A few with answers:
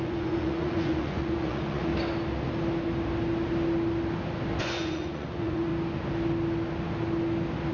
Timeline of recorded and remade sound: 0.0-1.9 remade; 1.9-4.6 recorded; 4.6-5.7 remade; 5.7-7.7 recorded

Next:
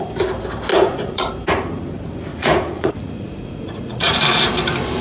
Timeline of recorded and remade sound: 0.0-0.7 recorded; 0.7-1.3 remade; 1.3-2.3 recorded; 2.3-4.5 remade; 4.5-5.0 recorded

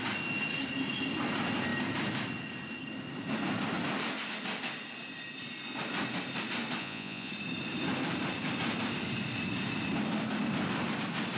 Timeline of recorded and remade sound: 0.0-6.8 recorded; 6.8-7.3 remade; 7.3-11.4 recorded

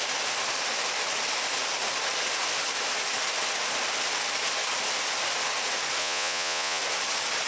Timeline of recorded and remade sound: 0.0-6.0 recorded; 6.0-6.8 remade; 6.8-7.5 recorded

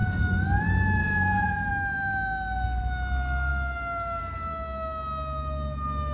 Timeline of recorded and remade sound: 0.0-1.0 recorded; 1.0-1.7 remade; 1.7-6.1 recorded